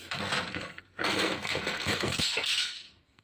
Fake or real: fake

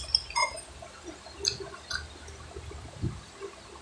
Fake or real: real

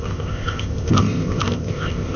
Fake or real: fake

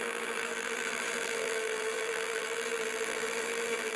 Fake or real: fake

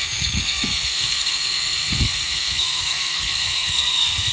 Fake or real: fake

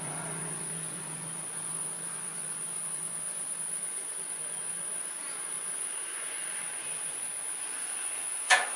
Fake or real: fake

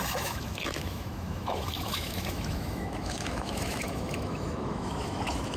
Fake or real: fake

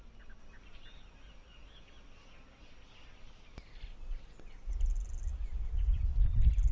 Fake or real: real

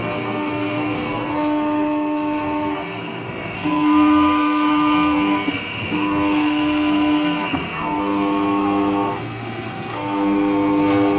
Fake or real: fake